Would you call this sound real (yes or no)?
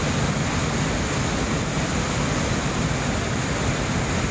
yes